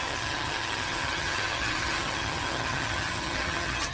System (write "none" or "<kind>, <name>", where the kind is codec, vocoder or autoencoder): vocoder, HiFi-GAN